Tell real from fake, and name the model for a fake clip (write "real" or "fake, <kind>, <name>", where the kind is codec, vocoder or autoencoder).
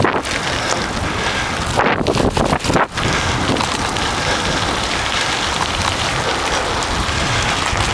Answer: real